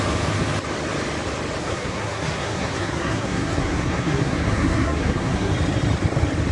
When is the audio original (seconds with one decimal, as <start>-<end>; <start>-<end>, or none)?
0.0-1.6; 5.5-6.5